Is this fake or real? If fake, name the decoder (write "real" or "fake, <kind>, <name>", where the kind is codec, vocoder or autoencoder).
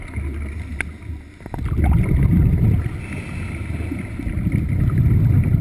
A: real